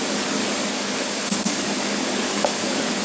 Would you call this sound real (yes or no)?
no